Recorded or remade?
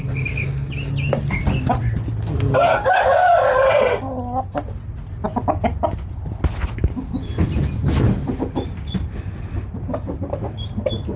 recorded